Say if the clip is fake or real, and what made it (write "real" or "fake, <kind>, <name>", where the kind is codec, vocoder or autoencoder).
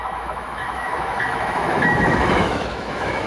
fake, autoencoder, DAC-VAE